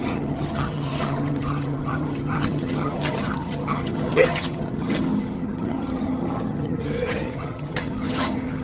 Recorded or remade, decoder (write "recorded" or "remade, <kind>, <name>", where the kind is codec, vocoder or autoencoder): remade, vocoder, HiFi-GAN